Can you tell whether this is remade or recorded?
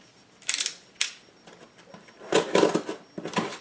recorded